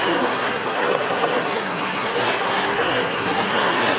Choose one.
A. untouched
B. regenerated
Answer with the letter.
B